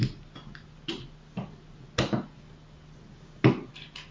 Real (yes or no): yes